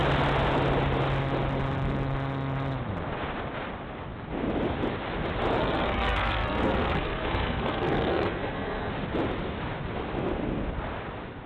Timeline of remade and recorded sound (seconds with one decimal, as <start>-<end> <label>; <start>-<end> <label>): 0.0-5.6 recorded; 5.6-8.9 remade; 8.9-11.5 recorded